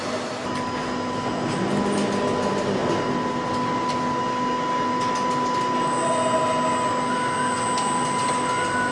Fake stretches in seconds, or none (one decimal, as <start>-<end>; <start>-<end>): none